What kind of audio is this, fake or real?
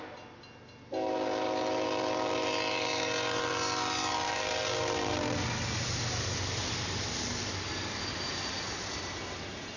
real